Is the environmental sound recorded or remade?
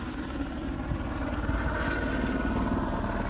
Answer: recorded